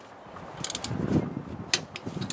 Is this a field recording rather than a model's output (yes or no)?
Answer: yes